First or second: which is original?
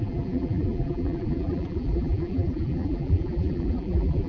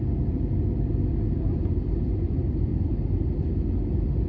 second